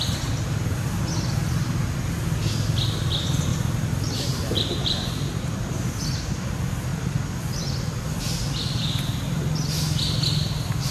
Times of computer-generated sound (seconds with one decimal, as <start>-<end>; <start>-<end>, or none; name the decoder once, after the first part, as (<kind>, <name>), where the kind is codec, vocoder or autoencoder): 3.5-6.0 (vocoder, BigVGAN v2)